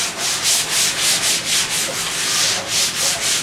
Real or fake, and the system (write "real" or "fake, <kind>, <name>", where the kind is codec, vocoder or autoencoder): real